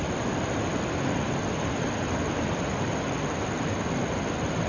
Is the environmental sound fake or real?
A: real